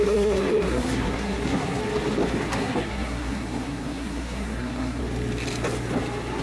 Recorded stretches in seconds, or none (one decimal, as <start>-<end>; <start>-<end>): 1.8-2.5; 5.0-6.4

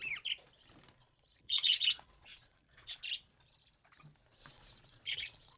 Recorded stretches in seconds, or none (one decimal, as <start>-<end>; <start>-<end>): 0.0-1.0; 3.0-4.4

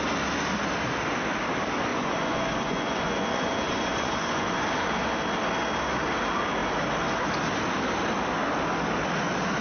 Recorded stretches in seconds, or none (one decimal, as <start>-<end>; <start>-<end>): 0.0-1.9; 4.5-9.6

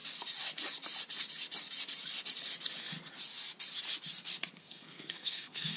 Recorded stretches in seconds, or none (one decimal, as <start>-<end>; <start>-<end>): 0.0-4.6

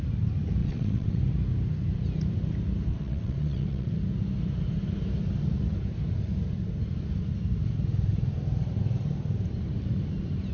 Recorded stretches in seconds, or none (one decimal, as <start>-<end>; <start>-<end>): 0.0-0.6; 1.2-2.9; 3.9-10.5